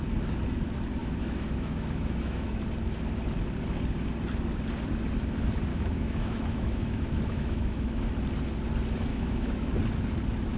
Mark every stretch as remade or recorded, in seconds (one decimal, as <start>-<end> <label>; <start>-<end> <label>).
0.0-1.0 recorded; 1.0-2.6 remade; 2.6-5.7 recorded; 5.7-8.1 remade; 8.1-9.1 recorded; 9.1-9.7 remade; 9.7-10.6 recorded